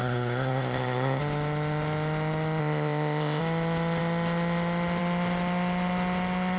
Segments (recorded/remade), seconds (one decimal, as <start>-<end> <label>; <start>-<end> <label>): 0.0-1.2 remade; 1.2-2.6 recorded; 2.6-3.4 remade; 3.4-6.6 recorded